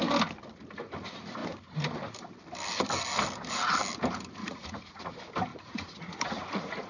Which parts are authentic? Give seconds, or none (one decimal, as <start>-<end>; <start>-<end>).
0.0-4.4; 5.1-5.5